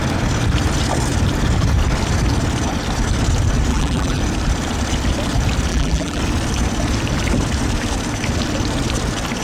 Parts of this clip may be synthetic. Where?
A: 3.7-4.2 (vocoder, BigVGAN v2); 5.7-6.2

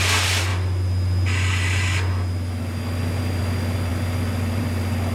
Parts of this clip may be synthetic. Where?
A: none

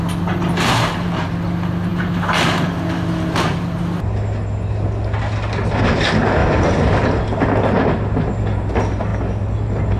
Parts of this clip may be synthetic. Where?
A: 6.4-7.1 (vocoder, BigVGAN v2)

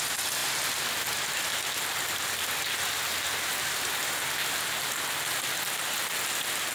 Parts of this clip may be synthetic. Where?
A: 3.5-4.0 (vocoder, BigVGAN v2)

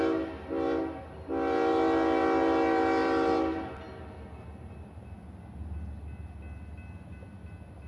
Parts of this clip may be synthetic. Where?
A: none

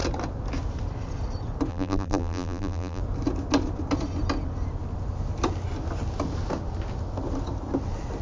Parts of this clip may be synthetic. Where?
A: 1.7-3.0 (vocoder, BigVGAN v2)

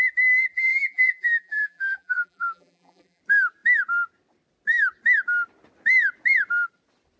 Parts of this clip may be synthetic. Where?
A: 0.5-3.2 (vocoder, BigVGAN v2)